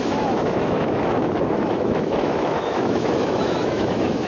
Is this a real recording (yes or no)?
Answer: no